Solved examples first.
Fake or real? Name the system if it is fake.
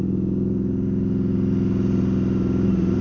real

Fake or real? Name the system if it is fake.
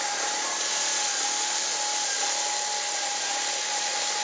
real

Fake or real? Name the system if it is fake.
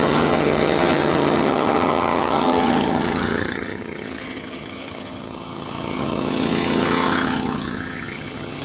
fake, vocoder, HiFi-GAN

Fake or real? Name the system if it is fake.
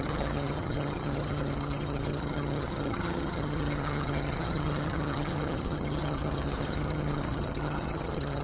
fake, vocoder, HiFi-GAN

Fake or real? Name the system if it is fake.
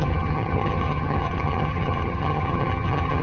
fake, vocoder, HiFi-GAN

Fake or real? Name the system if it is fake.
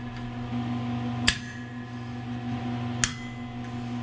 real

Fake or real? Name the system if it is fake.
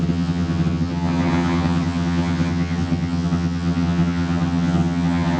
fake, vocoder, HiFi-GAN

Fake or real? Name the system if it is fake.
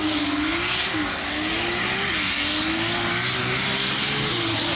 real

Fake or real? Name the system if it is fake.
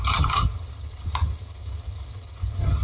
fake, vocoder, HiFi-GAN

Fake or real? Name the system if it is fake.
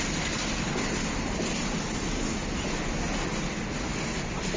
real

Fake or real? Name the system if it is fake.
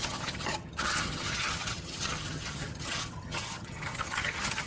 fake, vocoder, HiFi-GAN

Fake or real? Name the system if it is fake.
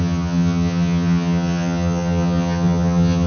fake, vocoder, HiFi-GAN